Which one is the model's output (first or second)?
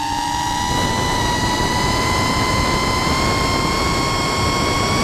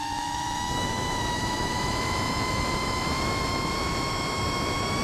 second